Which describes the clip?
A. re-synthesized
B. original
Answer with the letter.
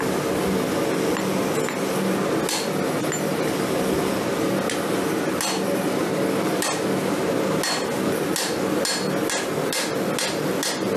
B